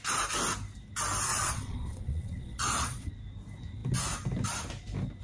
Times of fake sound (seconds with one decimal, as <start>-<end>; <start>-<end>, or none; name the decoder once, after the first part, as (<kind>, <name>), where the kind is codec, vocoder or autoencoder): 1.3-3.1 (vocoder, Vocos)

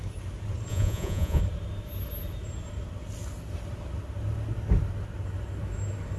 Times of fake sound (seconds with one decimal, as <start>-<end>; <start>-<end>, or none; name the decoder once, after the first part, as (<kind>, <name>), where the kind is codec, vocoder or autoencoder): 0.7-1.4 (vocoder, Vocos)

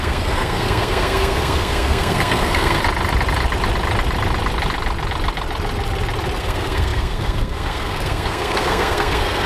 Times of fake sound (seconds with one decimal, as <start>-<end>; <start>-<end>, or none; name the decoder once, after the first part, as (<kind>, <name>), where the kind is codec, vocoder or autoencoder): 0.0-2.8 (codec, SNAC); 6.4-9.5

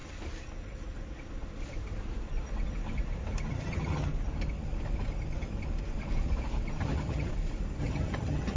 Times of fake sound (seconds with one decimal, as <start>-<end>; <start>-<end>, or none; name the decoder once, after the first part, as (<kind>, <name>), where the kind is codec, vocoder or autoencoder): 3.5-4.1 (vocoder, HiFi-GAN); 6.8-7.3; 7.8-8.6

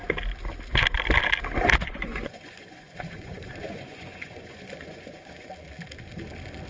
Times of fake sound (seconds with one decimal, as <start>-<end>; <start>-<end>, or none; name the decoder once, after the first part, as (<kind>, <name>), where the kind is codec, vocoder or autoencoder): 1.8-5.5 (vocoder, Vocos)

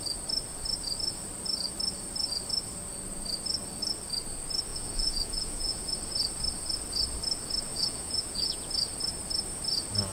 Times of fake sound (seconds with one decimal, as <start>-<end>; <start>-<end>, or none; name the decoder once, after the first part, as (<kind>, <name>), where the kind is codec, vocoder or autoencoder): 4.7-5.9 (vocoder, Vocos); 7.7-8.6

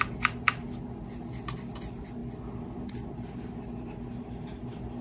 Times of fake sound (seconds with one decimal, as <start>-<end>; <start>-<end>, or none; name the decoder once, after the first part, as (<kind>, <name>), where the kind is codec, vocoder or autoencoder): none